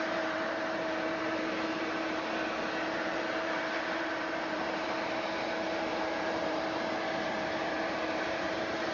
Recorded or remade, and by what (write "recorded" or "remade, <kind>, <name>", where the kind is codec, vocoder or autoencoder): remade, vocoder, BigVGAN v2